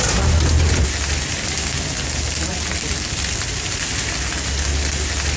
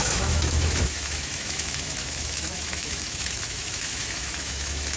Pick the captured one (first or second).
first